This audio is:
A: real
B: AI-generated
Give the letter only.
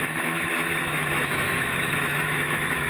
B